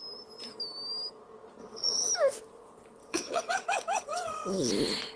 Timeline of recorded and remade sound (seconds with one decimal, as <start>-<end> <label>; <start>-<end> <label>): 0.0-1.6 recorded; 1.6-2.1 remade; 2.1-3.0 recorded; 3.0-4.7 remade; 4.7-5.2 recorded